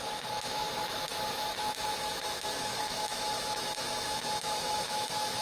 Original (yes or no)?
no